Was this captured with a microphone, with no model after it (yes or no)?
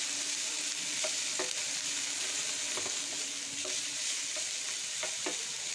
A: yes